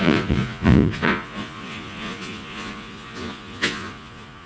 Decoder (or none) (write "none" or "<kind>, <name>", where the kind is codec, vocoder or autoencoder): vocoder, Vocos